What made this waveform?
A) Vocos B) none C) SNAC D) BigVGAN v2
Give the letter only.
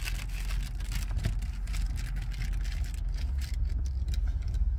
B